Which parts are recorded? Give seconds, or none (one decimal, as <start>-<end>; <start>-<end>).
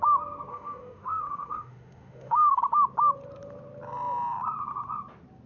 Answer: 0.0-0.5; 2.6-5.5